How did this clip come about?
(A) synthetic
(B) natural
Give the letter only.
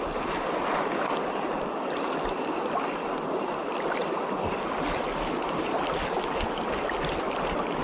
B